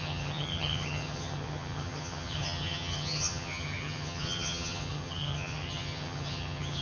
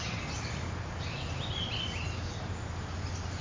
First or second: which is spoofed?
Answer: first